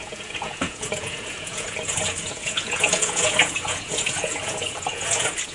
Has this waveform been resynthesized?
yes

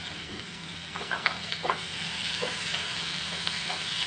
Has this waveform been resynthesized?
yes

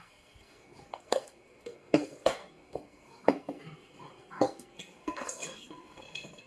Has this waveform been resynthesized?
yes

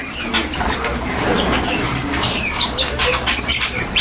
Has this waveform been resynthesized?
yes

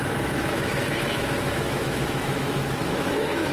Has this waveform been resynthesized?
yes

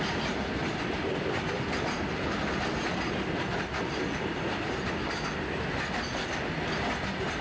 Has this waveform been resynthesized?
no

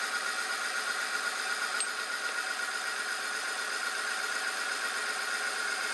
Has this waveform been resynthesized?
no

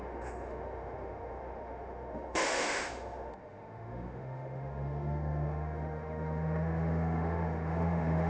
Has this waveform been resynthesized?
yes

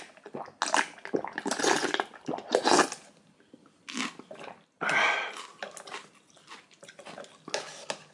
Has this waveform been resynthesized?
no